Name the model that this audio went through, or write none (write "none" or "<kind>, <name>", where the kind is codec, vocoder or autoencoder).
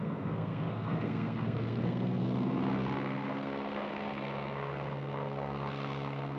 codec, SNAC